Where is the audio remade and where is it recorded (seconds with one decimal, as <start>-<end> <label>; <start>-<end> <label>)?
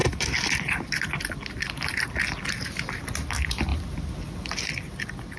0.0-5.4 recorded